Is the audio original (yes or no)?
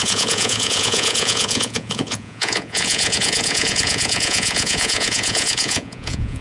no